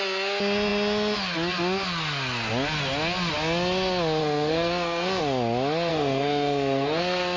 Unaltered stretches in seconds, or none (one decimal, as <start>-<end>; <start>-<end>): 0.0-4.2; 5.2-5.9